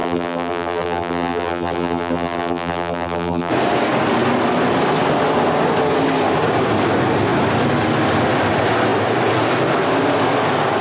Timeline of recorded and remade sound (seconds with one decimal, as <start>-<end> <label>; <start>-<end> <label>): 0.0-3.5 remade; 3.5-10.8 recorded